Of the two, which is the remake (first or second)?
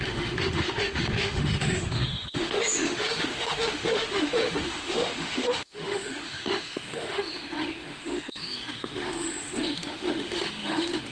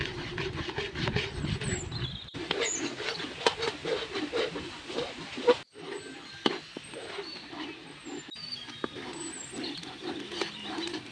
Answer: first